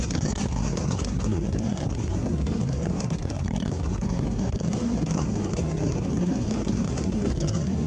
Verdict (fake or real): fake